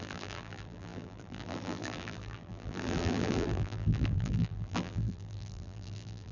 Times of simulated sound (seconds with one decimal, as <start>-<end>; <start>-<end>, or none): 0.0-6.3